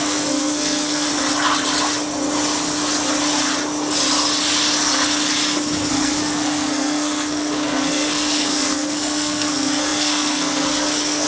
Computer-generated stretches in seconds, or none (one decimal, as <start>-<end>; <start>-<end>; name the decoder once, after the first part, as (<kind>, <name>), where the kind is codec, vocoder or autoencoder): 0.0-1.1 (codec, SNAC); 5.9-11.3